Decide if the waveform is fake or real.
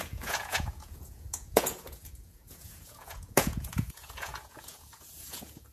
fake